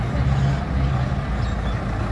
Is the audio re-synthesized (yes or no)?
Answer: no